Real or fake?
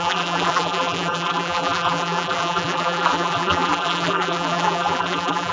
fake